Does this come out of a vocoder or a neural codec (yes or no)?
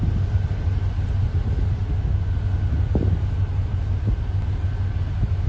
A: no